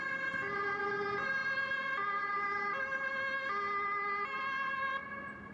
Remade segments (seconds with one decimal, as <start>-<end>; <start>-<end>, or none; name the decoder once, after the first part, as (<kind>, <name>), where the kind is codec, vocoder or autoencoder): none